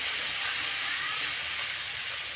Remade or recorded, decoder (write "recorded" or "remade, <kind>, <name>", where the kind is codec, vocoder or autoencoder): recorded